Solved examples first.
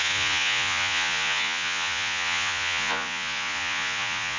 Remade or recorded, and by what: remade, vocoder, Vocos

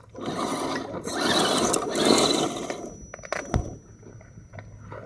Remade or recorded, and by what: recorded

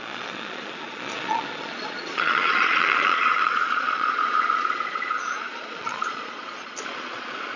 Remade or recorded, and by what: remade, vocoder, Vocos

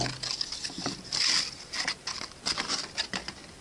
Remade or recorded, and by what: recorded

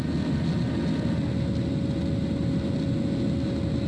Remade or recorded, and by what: recorded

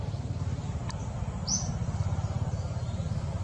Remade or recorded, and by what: recorded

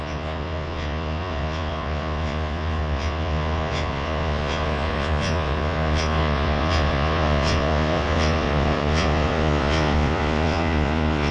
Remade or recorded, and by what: remade, vocoder, Vocos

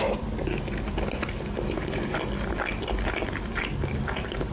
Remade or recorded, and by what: recorded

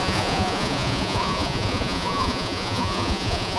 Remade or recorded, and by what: remade, vocoder, Vocos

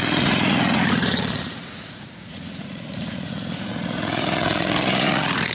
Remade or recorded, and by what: remade, vocoder, Vocos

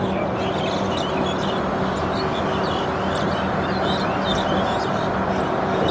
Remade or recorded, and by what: recorded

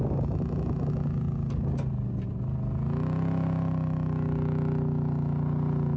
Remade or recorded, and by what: recorded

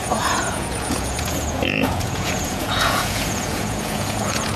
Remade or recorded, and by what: remade, vocoder, Vocos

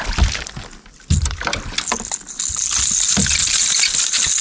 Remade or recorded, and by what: recorded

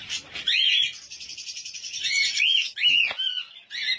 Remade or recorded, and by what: recorded